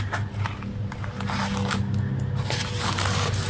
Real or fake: real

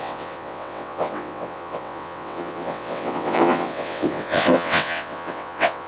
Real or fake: fake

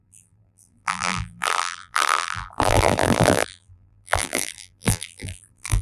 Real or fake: fake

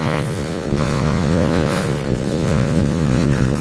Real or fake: fake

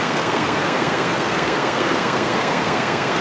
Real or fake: fake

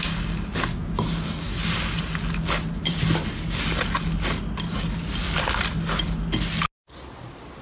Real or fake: real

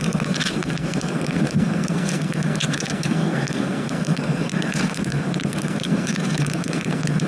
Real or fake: fake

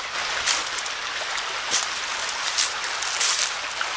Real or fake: real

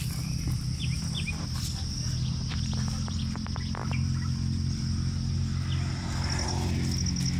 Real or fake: real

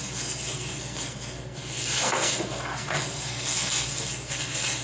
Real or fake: fake